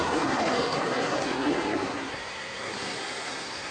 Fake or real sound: fake